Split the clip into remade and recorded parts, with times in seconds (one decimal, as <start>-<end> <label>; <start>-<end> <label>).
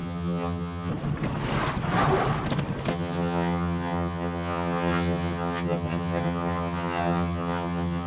0.0-0.9 remade; 0.9-2.9 recorded; 2.9-8.1 remade